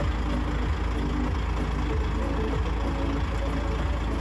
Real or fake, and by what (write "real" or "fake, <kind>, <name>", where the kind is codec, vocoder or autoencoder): real